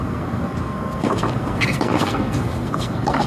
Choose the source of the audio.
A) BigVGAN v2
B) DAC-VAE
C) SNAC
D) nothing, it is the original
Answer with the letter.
C